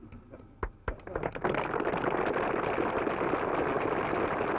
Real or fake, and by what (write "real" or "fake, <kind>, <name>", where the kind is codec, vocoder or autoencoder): real